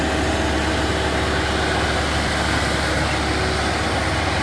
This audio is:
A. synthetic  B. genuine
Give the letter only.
B